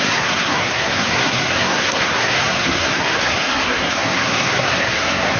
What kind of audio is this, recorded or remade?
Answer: remade